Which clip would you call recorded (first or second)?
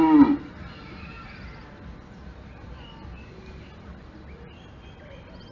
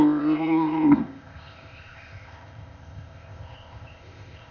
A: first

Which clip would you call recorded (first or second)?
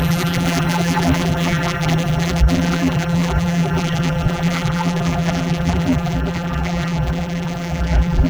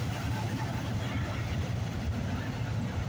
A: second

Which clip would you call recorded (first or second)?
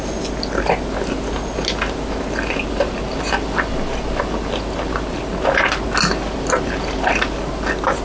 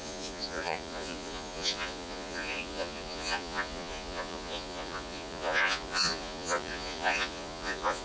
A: first